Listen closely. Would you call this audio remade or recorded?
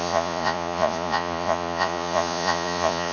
remade